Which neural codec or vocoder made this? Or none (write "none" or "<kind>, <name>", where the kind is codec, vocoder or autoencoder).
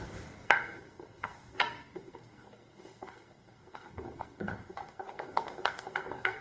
codec, SNAC